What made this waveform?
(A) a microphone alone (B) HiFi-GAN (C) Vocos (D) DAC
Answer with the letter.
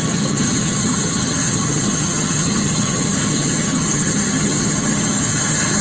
B